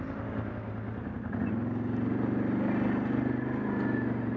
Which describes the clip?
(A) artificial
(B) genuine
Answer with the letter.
B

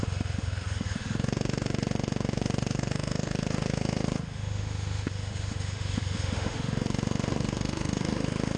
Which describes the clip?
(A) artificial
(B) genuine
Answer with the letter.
A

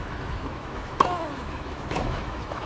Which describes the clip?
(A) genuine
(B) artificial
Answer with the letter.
B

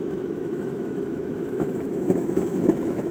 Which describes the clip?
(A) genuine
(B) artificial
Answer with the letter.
B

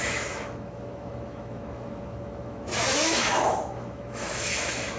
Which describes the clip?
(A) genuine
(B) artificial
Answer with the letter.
B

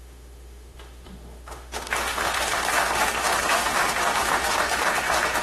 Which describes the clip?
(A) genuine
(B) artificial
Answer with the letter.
B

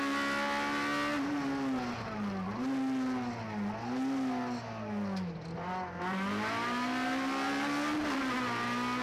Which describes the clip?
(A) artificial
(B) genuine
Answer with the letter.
B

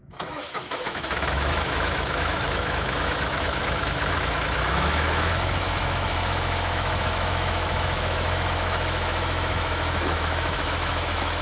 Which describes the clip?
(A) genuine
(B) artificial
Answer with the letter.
B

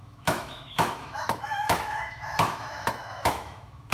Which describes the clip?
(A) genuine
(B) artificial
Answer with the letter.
B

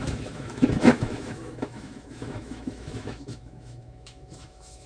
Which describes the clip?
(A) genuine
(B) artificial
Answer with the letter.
B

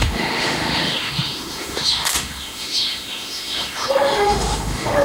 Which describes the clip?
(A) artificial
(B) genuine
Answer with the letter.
A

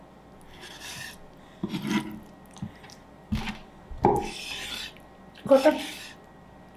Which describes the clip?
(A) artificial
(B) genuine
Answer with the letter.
B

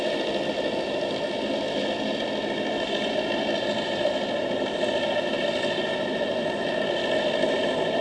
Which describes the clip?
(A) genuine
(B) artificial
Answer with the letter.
A